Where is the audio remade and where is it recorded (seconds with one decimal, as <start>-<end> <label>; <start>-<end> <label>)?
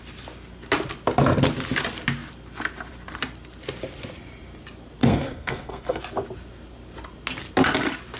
0.0-5.0 recorded; 5.0-6.0 remade; 6.0-8.2 recorded